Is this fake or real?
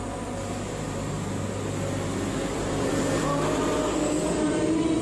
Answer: fake